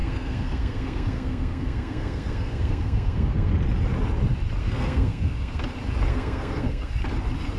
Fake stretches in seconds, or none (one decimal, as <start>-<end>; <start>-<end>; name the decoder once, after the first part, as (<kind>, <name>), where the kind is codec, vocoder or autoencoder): 0.0-3.5 (codec, SNAC); 4.6-5.6; 6.1-6.9